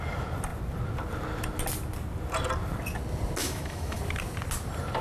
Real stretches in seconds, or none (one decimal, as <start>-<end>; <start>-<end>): 0.0-3.4; 4.0-5.0